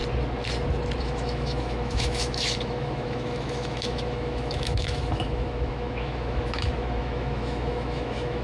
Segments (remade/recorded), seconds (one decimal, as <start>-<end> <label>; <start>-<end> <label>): 0.0-1.0 recorded; 1.0-8.4 remade